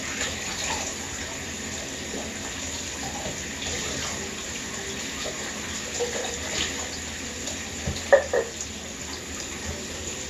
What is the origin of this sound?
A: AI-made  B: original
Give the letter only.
B